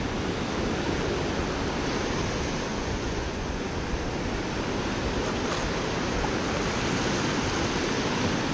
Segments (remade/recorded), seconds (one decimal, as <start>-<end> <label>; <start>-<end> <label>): 0.0-2.7 recorded; 2.7-3.7 remade; 3.7-8.5 recorded